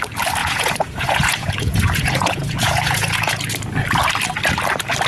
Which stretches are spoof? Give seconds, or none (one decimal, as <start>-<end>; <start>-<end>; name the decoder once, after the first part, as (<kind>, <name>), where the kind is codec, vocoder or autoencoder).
0.4-3.5 (vocoder, Vocos)